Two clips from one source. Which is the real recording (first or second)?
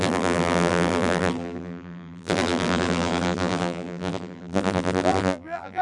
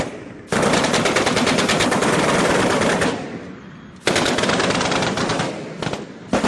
second